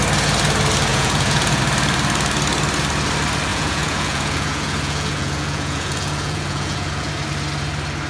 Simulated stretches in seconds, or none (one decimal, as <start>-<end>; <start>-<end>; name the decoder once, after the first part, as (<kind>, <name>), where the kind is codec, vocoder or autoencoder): 0.9-1.6 (vocoder, Vocos); 3.5-7.1

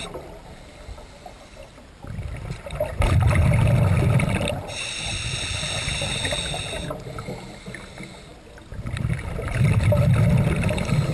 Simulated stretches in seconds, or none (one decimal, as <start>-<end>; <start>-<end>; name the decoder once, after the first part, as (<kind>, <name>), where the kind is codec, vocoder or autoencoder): none

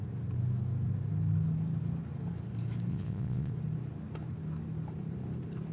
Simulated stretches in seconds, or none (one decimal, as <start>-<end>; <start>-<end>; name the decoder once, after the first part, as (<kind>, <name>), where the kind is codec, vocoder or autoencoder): 2.9-3.5 (vocoder, Vocos)

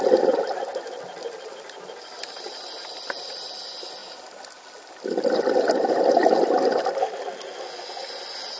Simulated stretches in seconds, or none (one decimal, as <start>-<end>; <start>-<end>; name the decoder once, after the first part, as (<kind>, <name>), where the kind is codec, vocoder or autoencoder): none